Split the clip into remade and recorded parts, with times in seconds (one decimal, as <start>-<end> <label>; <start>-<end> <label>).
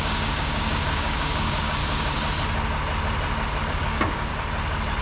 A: 0.0-1.8 remade; 1.8-3.6 recorded; 3.6-4.3 remade; 4.3-5.0 recorded